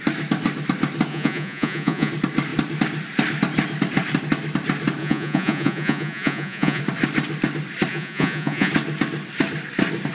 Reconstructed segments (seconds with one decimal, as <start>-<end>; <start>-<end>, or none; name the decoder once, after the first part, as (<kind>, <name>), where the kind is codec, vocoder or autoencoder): 1.1-2.1 (vocoder, Vocos); 5.0-6.8; 7.9-8.7